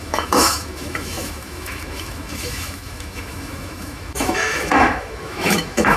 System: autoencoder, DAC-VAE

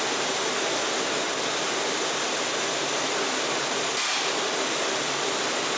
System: none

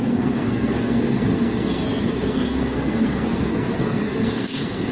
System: codec, SNAC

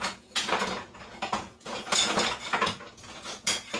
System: vocoder, Vocos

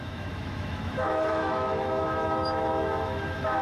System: autoencoder, DAC-VAE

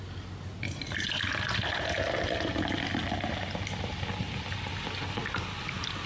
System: none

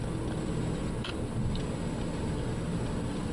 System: none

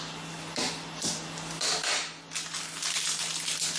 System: none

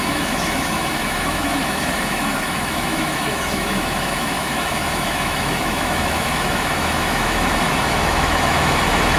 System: autoencoder, DAC-VAE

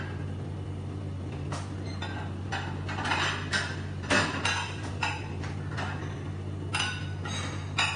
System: none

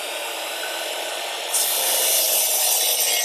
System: none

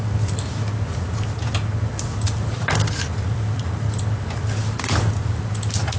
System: none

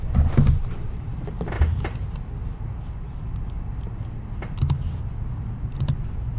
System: none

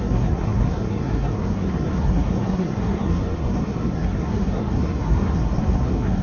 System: codec, SNAC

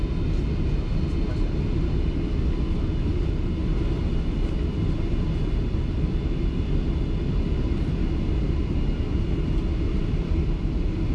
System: none